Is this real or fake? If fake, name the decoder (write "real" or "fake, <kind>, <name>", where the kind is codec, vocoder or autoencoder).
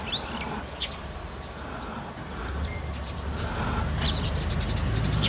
real